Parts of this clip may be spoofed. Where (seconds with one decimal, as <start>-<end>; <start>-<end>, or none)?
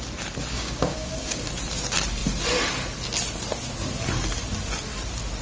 0.5-1.5